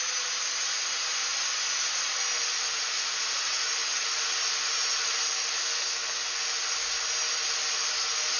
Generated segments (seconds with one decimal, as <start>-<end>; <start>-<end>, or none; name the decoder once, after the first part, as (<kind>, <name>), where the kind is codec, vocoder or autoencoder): 5.6-6.4 (codec, SNAC)